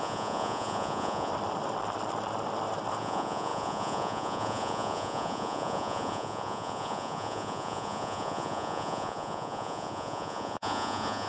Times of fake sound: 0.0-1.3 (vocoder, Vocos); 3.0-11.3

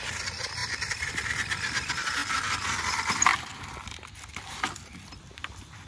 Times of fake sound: 0.0-2.2 (vocoder, BigVGAN v2); 2.8-3.3; 5.2-5.9

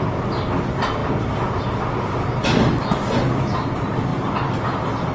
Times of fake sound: none

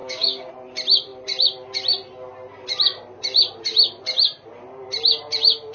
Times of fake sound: 0.0-0.5 (codec, DAC)